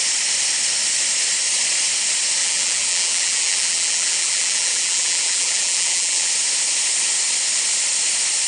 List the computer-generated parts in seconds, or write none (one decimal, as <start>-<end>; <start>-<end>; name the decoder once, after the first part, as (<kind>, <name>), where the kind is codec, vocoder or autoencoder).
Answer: 2.4-6.3 (vocoder, BigVGAN v2)